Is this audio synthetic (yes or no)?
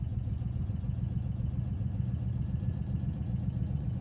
yes